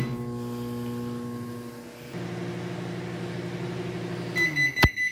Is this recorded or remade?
recorded